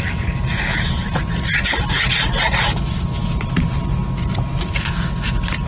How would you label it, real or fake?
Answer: real